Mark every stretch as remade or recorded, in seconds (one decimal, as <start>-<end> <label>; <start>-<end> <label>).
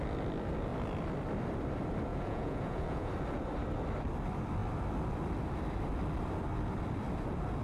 0.0-2.1 recorded; 2.1-3.1 remade; 3.1-7.6 recorded